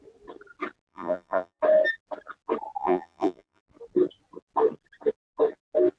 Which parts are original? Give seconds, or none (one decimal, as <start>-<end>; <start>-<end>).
0.0-0.9; 1.6-2.8; 3.6-6.0